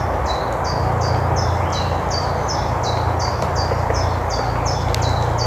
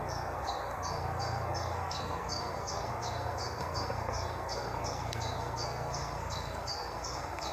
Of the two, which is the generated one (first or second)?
second